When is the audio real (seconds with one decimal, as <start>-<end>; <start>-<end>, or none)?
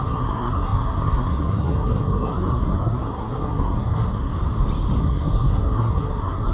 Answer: 4.3-5.0